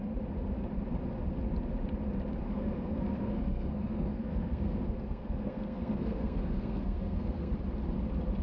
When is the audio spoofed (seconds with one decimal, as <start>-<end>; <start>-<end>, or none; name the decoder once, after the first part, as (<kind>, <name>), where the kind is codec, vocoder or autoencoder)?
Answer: 2.5-7.5 (codec, SNAC)